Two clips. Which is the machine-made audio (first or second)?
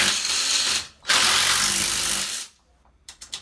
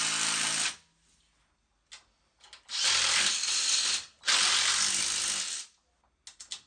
first